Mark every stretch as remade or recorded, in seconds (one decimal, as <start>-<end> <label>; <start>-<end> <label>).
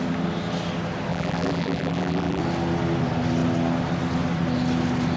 0.0-1.1 recorded; 1.1-2.4 remade; 2.4-5.2 recorded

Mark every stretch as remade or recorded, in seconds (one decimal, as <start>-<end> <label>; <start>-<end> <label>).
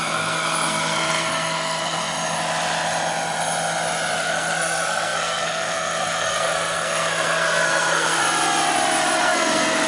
0.0-2.0 remade; 2.0-4.2 recorded; 4.2-8.2 remade; 8.2-9.2 recorded; 9.2-9.9 remade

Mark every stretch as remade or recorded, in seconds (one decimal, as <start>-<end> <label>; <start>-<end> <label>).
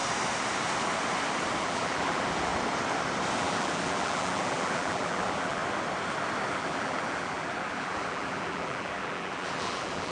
0.0-1.6 recorded; 1.6-2.5 remade; 2.5-3.4 recorded; 3.4-5.6 remade; 5.6-6.5 recorded; 6.5-10.1 remade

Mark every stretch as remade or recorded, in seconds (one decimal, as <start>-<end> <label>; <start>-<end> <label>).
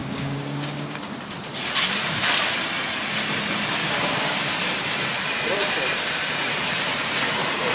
0.0-1.0 remade; 1.0-3.8 recorded; 3.8-4.4 remade; 4.4-7.7 recorded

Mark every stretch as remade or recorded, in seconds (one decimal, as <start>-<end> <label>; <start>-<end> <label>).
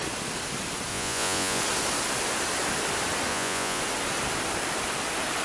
0.0-0.9 recorded; 0.9-1.6 remade; 1.6-3.3 recorded; 3.3-3.8 remade; 3.8-5.4 recorded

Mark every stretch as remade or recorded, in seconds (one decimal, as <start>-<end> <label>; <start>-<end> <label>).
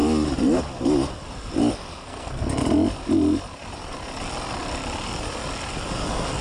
0.0-1.7 recorded; 1.7-2.6 remade; 2.6-6.4 recorded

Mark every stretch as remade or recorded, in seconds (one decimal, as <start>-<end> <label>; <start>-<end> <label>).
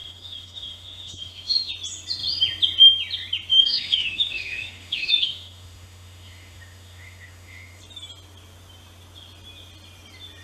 0.0-1.7 remade; 1.7-3.5 recorded; 3.5-7.8 remade; 7.8-10.4 recorded